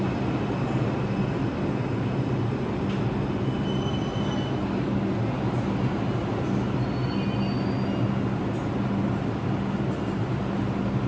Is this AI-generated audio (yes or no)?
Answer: no